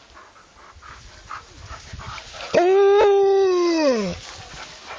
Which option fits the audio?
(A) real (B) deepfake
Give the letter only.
A